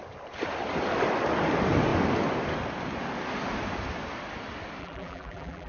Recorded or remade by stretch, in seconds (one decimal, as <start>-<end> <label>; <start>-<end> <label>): 0.0-4.8 recorded; 4.8-5.7 remade